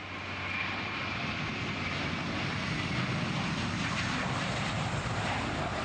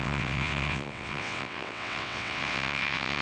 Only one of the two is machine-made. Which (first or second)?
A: second